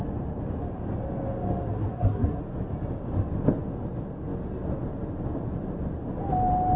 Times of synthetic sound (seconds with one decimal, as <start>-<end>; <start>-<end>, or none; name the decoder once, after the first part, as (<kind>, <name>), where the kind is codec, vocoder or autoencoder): 1.7-2.4 (codec, SNAC)